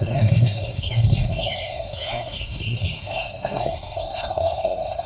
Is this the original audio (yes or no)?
no